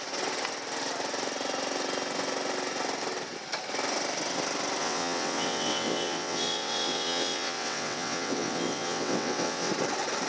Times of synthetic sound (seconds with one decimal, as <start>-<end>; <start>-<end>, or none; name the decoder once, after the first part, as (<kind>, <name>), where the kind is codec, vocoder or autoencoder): 4.8-9.7 (vocoder, WaveNeXt)